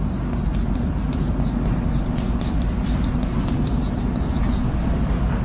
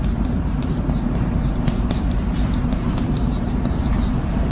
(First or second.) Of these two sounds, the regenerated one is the second